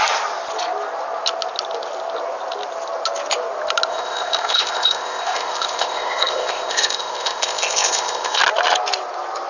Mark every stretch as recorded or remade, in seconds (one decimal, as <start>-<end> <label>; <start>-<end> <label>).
0.0-3.9 recorded; 3.9-8.4 remade; 8.4-9.5 recorded